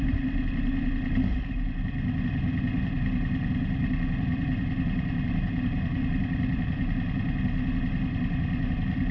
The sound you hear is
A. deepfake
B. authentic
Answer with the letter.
B